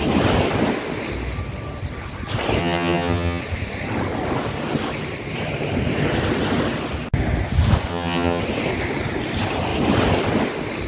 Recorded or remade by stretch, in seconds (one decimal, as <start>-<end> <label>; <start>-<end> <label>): 0.0-2.6 recorded; 2.6-3.4 remade; 3.4-7.9 recorded; 7.9-8.4 remade; 8.4-10.9 recorded